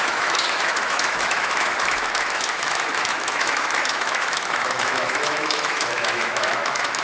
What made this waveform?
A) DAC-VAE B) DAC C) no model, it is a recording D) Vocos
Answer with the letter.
A